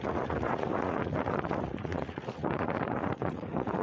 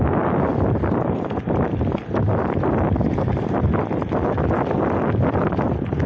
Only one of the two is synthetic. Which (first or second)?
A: first